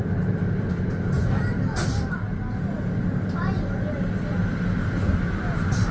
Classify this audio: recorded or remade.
recorded